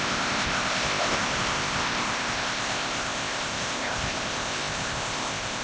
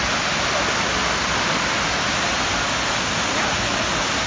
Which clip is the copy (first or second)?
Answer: first